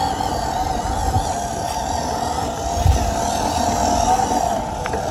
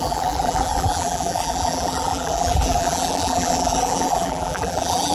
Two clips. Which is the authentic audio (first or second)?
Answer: first